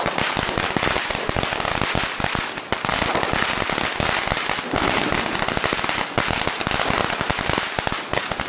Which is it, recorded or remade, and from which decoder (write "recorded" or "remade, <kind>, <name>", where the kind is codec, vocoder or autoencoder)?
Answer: recorded